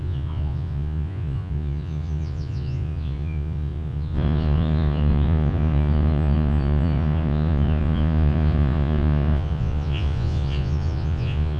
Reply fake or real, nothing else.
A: fake